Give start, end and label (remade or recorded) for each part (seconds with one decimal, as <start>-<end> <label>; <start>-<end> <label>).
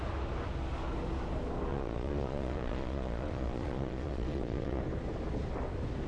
0.0-1.7 recorded; 1.7-4.8 remade; 4.8-6.1 recorded